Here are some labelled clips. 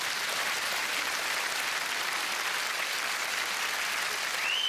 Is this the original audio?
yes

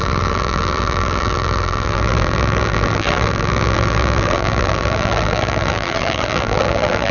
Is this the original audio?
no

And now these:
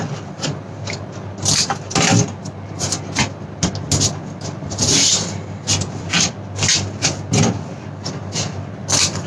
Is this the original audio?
yes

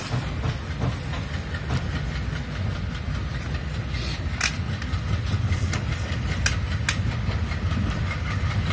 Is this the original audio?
yes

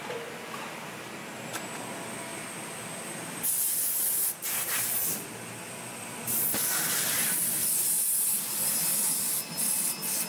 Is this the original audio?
yes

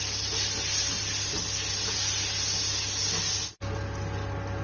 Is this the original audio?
yes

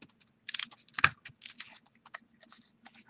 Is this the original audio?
yes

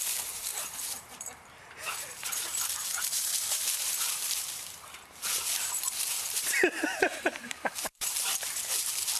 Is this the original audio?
no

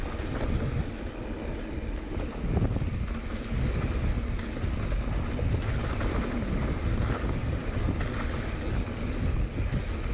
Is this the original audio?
yes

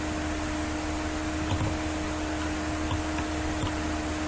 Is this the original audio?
yes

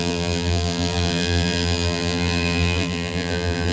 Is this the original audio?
no